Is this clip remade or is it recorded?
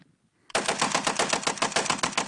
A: recorded